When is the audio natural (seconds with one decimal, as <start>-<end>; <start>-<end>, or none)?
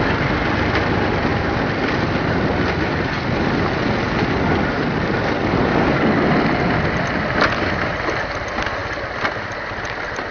0.0-10.3